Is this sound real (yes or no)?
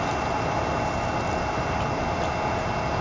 yes